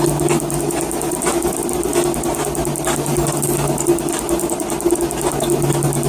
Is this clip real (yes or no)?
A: yes